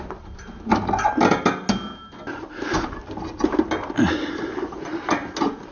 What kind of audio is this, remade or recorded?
recorded